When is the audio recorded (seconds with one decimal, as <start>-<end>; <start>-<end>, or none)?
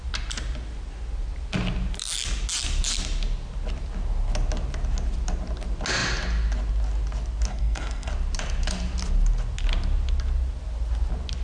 0.0-7.5; 8.1-11.4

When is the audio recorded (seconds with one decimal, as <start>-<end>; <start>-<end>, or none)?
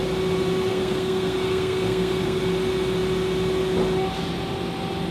0.0-0.7; 2.4-5.1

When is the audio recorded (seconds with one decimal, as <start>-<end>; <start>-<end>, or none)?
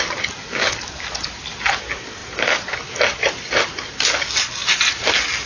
0.0-2.2; 2.8-4.6; 5.1-5.5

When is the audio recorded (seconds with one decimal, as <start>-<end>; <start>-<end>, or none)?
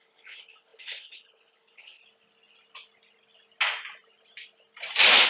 2.0-5.3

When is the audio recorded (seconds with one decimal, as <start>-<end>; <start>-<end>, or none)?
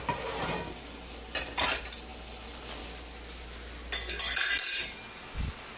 0.0-5.8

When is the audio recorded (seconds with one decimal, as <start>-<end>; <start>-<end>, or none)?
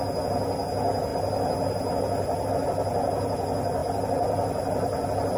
0.0-5.4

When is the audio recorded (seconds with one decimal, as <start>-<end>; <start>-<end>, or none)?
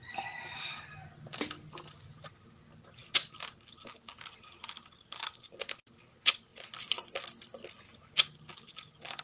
0.0-9.2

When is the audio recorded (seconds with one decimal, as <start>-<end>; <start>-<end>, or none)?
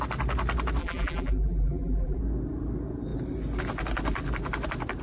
0.0-0.8; 2.2-5.0